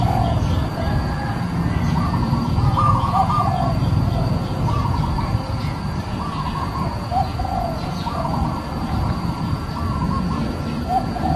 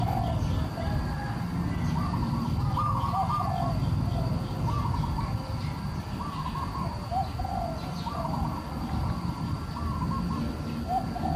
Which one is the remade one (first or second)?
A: first